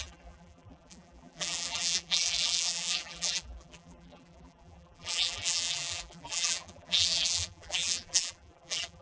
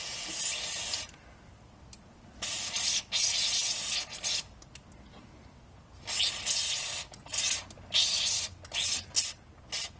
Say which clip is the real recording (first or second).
second